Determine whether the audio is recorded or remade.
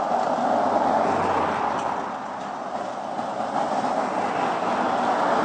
recorded